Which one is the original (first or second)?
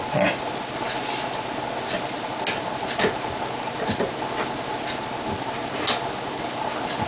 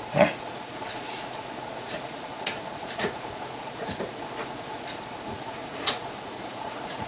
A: first